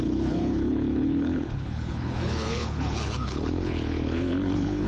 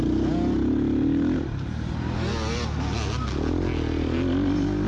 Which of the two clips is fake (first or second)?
first